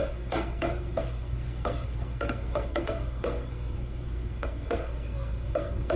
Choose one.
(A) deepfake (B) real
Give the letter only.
A